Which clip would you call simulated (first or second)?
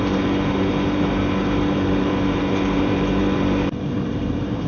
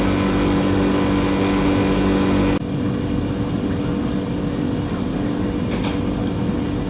first